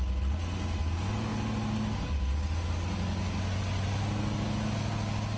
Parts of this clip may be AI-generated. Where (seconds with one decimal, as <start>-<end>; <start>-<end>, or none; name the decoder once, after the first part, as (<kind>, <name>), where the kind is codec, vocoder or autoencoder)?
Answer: none